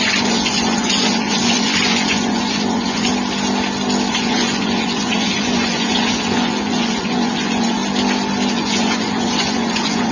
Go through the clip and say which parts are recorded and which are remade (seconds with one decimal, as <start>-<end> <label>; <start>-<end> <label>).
0.0-3.1 remade; 3.1-4.1 recorded; 4.1-7.8 remade; 7.8-8.5 recorded; 8.5-10.1 remade